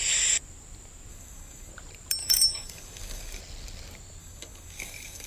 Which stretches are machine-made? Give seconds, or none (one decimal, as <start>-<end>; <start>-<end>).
1.1-1.7; 2.2-3.4; 4.2-5.3